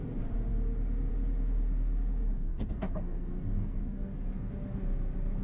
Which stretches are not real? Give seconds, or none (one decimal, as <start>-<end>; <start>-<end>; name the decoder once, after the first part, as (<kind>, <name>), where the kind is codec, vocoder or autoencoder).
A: 2.5-4.5 (codec, SNAC)